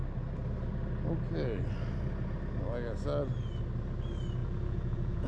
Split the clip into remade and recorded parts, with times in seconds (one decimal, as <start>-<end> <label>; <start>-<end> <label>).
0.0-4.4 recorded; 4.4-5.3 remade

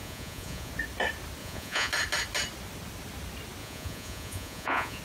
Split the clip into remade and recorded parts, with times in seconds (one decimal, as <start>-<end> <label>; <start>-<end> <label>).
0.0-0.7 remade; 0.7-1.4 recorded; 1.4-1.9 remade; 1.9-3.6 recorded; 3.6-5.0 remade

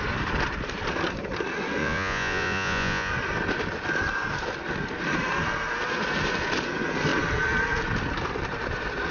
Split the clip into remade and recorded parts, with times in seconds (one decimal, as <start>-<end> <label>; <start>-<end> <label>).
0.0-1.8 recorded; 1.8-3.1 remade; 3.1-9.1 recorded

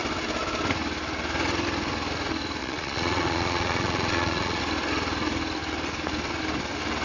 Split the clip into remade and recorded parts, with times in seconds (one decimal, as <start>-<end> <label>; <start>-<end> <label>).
0.0-2.6 recorded; 2.6-4.6 remade; 4.6-7.0 recorded

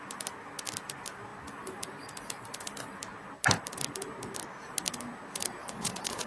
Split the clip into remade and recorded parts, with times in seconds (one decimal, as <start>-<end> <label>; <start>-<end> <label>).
0.0-5.6 recorded; 5.6-6.3 remade

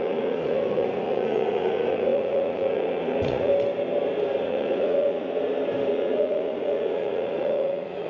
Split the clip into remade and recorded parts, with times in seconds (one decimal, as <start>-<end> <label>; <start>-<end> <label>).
0.0-3.5 remade; 3.5-4.4 recorded; 4.4-5.4 remade; 5.4-5.9 recorded; 5.9-8.1 remade

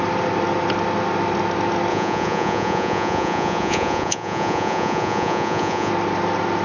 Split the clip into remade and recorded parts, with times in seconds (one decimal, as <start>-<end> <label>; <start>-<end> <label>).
0.0-1.9 recorded; 1.9-5.9 remade; 5.9-6.6 recorded

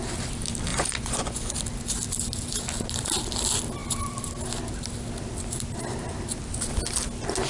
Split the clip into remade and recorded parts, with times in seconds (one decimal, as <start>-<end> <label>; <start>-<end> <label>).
0.0-0.7 recorded; 0.7-1.5 remade; 1.5-7.5 recorded